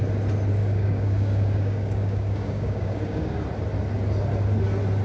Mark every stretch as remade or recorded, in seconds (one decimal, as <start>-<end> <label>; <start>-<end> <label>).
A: 0.0-0.6 recorded; 0.6-3.4 remade; 3.4-5.0 recorded